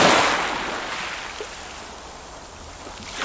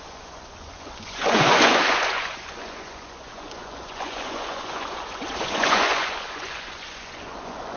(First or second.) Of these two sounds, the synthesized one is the second